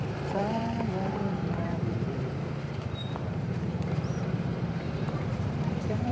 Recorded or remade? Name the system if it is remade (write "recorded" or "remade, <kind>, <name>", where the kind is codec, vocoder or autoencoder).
remade, vocoder, BigVGAN v2